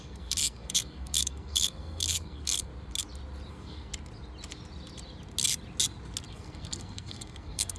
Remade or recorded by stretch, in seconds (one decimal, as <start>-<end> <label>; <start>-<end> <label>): 0.0-2.7 remade; 2.7-3.5 recorded; 3.5-3.9 remade; 3.9-6.3 recorded; 6.3-7.8 remade